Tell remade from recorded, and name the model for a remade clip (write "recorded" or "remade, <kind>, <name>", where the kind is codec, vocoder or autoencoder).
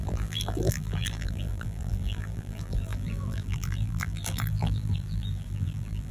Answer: remade, vocoder, BigVGAN v2